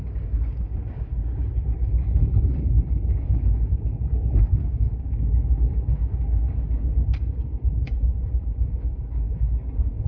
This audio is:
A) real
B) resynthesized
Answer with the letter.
B